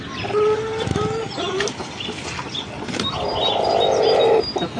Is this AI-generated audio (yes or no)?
no